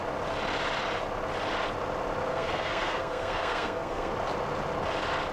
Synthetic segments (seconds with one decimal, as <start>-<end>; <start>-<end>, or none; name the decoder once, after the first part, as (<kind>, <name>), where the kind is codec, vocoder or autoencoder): 2.3-4.1 (codec, SNAC)